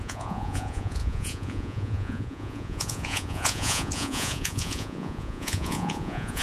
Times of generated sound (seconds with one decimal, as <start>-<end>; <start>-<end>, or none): 0.0-6.4